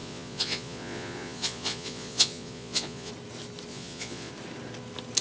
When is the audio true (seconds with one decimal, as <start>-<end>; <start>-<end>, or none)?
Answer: 3.1-3.7; 4.3-5.2